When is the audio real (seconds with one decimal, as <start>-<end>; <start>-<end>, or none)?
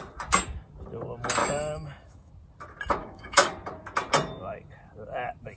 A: 0.0-1.4; 2.3-3.0; 3.5-5.6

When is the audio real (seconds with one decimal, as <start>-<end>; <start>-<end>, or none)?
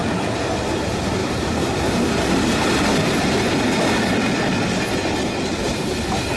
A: 0.0-6.4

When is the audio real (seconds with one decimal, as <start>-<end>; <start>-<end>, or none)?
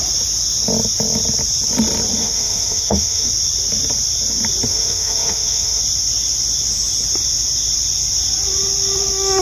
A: 0.0-2.2; 3.3-4.7; 5.8-9.4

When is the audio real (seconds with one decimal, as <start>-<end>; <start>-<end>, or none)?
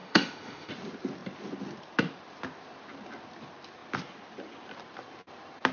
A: 0.7-5.7